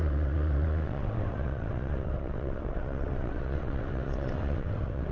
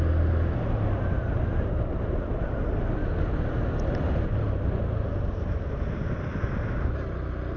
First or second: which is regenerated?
first